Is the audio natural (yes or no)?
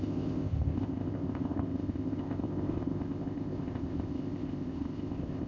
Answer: no